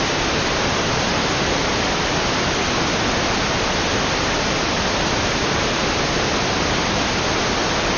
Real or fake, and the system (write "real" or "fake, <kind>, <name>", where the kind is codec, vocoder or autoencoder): real